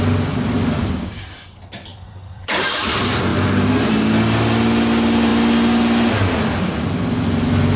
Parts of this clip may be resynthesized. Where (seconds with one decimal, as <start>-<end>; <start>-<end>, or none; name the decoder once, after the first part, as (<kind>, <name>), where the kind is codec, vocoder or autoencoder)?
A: 1.9-2.8 (vocoder, BigVGAN v2); 3.3-3.9